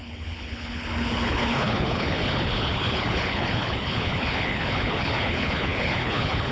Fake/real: fake